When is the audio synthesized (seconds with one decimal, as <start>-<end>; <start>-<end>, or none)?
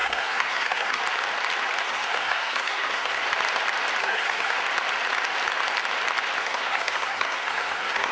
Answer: 0.0-1.0; 1.8-3.2; 4.0-4.6; 6.4-8.1